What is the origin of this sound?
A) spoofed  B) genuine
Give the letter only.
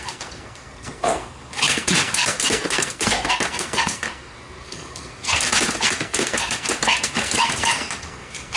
A